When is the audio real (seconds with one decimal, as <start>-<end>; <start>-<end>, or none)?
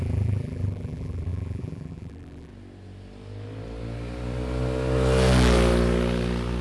2.5-6.6